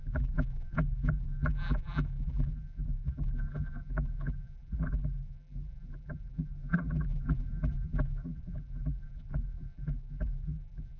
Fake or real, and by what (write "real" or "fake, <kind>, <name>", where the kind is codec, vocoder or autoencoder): fake, vocoder, BigVGAN v2